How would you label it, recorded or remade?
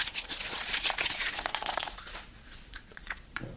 remade